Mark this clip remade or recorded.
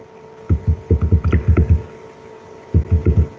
recorded